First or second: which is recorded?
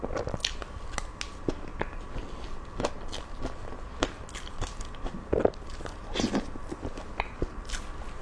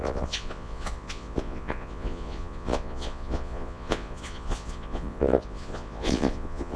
first